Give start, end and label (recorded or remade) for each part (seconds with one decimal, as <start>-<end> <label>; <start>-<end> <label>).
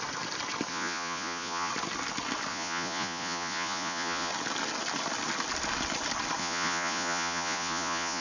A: 0.0-0.7 recorded; 0.7-1.7 remade; 1.7-2.5 recorded; 2.5-4.3 remade; 4.3-6.4 recorded; 6.4-8.2 remade